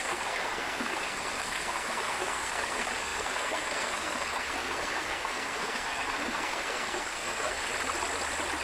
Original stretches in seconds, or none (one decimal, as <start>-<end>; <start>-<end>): 7.7-8.6